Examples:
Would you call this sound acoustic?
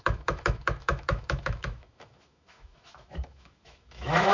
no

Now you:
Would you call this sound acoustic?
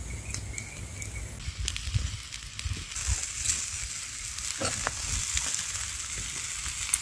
yes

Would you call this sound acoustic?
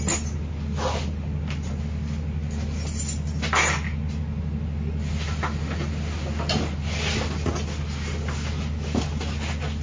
yes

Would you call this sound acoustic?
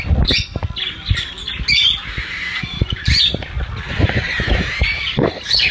yes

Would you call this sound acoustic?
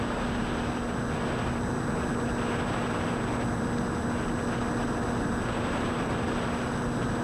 yes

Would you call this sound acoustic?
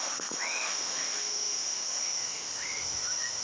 no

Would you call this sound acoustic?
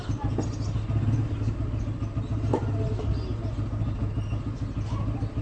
yes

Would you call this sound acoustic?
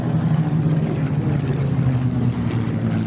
yes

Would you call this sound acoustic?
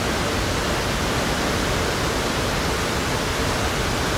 yes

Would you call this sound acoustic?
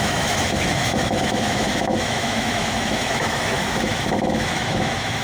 no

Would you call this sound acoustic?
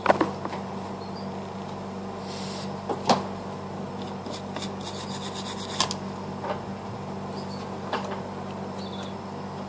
yes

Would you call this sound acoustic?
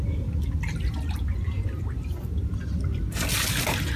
yes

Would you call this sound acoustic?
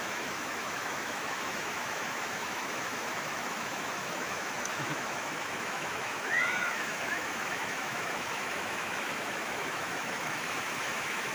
no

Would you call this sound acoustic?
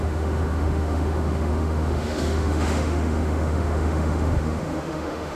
no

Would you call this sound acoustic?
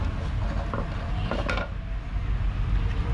yes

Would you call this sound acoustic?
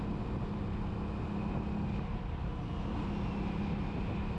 yes